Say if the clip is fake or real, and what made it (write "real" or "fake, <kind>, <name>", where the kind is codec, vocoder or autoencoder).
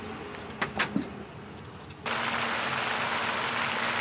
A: real